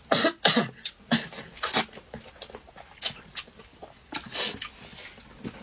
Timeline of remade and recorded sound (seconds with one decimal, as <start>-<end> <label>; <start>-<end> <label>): 0.0-3.7 recorded; 3.7-4.3 remade; 4.3-5.6 recorded